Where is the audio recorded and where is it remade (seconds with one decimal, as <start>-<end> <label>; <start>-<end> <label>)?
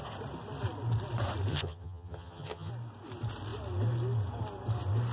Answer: 0.0-1.5 recorded; 1.5-2.7 remade; 2.7-5.1 recorded